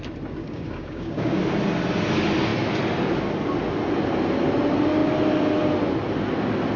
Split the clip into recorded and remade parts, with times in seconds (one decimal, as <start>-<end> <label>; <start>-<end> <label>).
0.0-0.4 recorded; 0.4-1.4 remade; 1.4-6.8 recorded